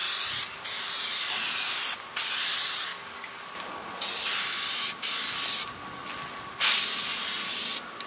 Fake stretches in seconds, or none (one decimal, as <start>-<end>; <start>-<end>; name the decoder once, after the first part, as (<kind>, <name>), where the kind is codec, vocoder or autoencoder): none